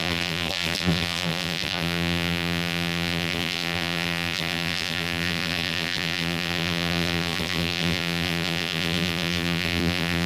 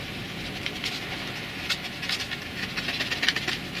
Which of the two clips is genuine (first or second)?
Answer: second